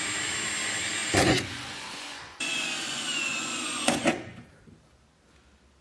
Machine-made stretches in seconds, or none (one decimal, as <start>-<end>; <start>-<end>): 1.0-4.5